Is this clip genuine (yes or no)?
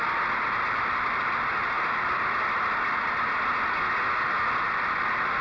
no